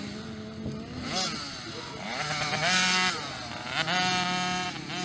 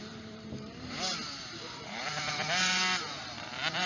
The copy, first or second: second